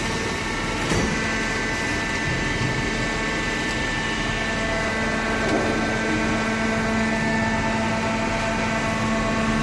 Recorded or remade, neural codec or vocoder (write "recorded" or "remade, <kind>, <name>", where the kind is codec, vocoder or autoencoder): recorded